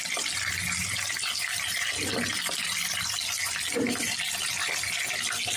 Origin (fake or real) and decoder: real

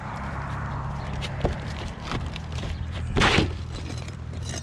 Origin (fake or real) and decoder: fake, vocoder, BigVGAN v2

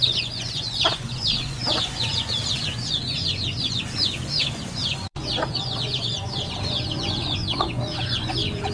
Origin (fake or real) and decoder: fake, vocoder, Vocos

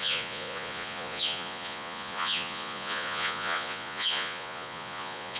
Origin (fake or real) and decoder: fake, vocoder, Vocos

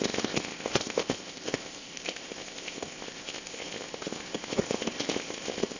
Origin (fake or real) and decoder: fake, codec, ZipCodec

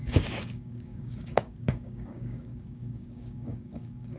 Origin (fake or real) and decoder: fake, codec, DAC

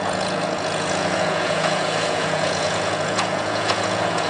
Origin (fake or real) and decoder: fake, vocoder, Vocos